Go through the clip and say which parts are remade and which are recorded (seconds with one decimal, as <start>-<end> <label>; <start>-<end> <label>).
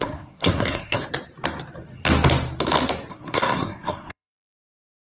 0.0-1.1 remade; 1.1-3.1 recorded; 3.1-5.1 remade